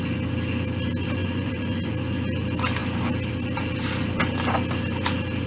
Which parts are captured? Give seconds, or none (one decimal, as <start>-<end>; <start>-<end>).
0.0-1.2; 1.9-5.5